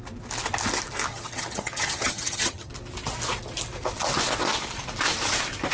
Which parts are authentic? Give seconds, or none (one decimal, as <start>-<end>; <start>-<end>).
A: 0.0-1.1; 2.7-5.7